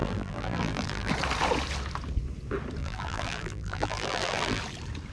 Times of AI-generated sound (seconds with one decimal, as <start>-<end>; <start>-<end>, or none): 0.0-1.1; 2.8-4.6